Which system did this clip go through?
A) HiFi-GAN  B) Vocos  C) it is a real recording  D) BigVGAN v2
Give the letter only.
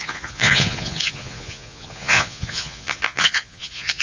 B